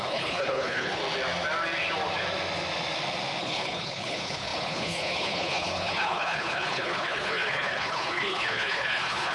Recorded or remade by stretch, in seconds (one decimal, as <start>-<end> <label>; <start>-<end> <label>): 0.0-1.0 remade; 1.0-3.4 recorded; 3.4-9.3 remade